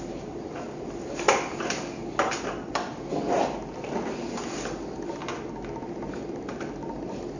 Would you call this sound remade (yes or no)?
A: no